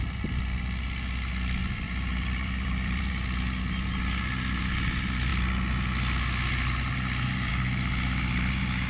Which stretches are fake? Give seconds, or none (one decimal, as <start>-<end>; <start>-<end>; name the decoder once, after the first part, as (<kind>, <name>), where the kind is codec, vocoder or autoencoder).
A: 1.6-3.1 (vocoder, BigVGAN v2)